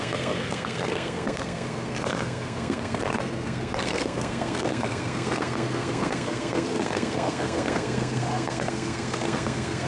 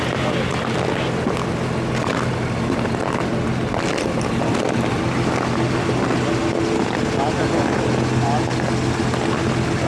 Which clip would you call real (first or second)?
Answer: second